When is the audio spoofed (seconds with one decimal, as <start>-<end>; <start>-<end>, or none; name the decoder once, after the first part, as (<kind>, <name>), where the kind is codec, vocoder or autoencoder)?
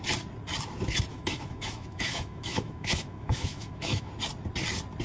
1.1-4.1 (autoencoder, DAC-VAE)